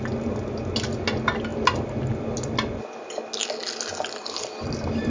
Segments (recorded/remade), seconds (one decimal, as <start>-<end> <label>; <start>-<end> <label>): 0.0-1.5 recorded; 1.5-2.0 remade; 2.0-5.1 recorded

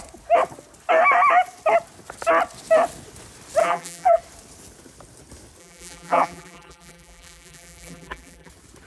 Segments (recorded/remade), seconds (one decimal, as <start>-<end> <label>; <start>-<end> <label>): 0.0-3.6 recorded; 3.6-4.2 remade; 4.2-5.6 recorded; 5.6-8.5 remade; 8.5-8.9 recorded

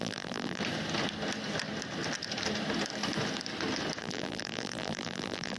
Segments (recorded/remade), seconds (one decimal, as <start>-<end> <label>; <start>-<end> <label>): 0.0-0.6 remade; 0.6-4.0 recorded; 4.0-5.6 remade

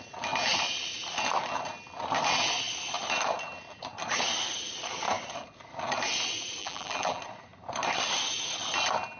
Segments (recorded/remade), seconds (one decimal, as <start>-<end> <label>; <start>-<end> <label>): 0.0-6.6 recorded; 6.6-7.2 remade; 7.2-9.2 recorded

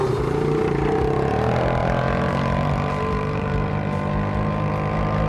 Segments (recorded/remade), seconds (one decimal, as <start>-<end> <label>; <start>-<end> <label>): 0.0-1.8 recorded; 1.8-3.7 remade; 3.7-5.3 recorded

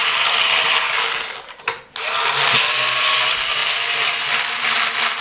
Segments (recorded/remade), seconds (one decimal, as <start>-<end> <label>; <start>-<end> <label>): 0.0-0.7 remade; 0.7-5.2 recorded